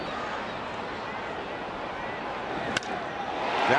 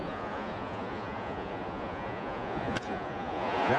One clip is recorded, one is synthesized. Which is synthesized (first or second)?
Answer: second